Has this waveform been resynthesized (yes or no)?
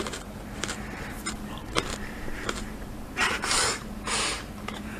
yes